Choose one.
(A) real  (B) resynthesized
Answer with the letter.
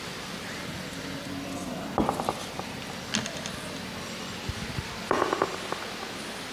A